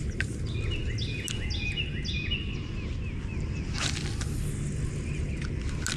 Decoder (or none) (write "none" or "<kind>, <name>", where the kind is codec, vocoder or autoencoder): none